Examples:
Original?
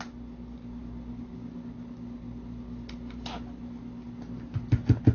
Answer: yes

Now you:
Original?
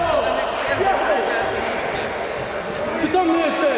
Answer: yes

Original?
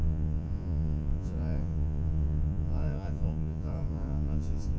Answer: no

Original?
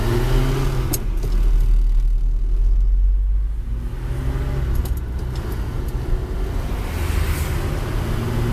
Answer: yes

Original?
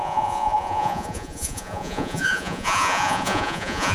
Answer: no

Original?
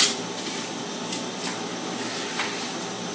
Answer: yes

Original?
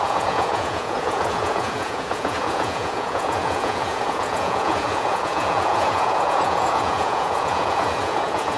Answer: no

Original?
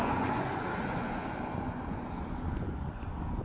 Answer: no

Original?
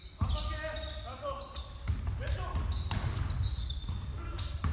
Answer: yes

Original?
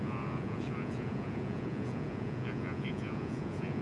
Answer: no